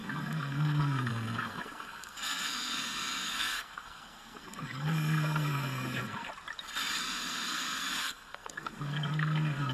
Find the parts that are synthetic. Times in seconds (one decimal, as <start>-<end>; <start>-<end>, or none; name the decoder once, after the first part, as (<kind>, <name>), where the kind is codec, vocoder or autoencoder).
0.0-6.3 (codec, SNAC); 7.0-9.7